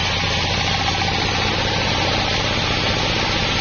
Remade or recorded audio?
recorded